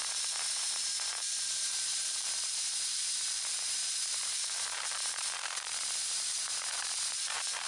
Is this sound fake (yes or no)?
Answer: yes